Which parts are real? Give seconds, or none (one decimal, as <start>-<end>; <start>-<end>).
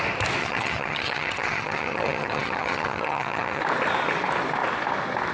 0.0-0.4; 3.6-5.3